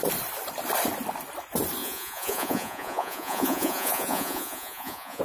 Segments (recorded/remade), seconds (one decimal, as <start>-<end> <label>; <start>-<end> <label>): 0.0-1.8 recorded; 1.8-5.2 remade